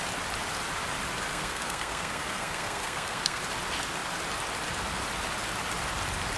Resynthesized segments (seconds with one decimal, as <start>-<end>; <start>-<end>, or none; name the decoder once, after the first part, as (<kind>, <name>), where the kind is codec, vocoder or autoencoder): 1.3-3.4 (codec, SNAC)

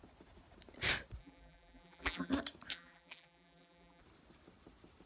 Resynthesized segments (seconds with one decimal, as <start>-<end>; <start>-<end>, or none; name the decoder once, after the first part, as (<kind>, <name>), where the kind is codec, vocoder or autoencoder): 1.2-2.3 (vocoder, BigVGAN v2); 2.7-4.0

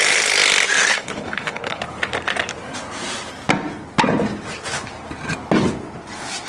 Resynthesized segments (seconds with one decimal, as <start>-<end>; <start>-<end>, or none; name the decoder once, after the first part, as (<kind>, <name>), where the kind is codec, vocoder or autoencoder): 0.9-1.8 (codec, HILCodec)

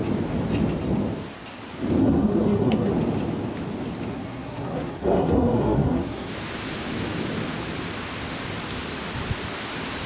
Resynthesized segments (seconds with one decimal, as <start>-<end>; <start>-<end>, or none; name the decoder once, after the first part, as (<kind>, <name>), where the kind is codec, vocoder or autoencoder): 2.0-2.9 (codec, SNAC); 4.1-6.3